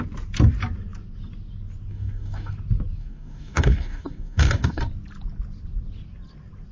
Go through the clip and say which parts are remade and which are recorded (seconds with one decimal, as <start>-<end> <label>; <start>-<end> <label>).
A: 0.0-1.9 recorded; 1.9-2.5 remade; 2.5-3.0 recorded; 3.0-4.8 remade; 4.8-6.7 recorded